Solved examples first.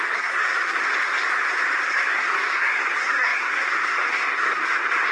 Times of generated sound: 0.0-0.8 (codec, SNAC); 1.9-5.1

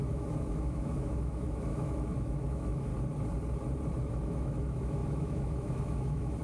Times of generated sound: 0.0-2.9 (autoencoder, DAC-VAE); 4.0-6.4

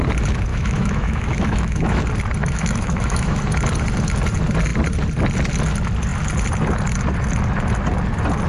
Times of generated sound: 0.5-2.0 (autoencoder, DAC-VAE); 2.4-3.4

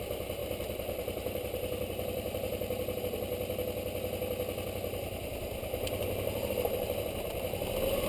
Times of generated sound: 0.4-3.0 (vocoder, BigVGAN v2)

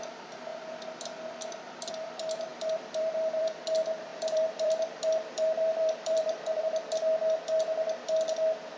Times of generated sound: 2.5-3.6 (vocoder, BigVGAN v2); 4.1-6.6

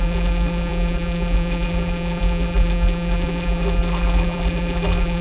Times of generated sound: 0.0-5.2 (vocoder, BigVGAN v2)

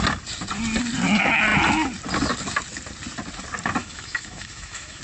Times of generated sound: 3.8-5.0 (autoencoder, DAC-VAE)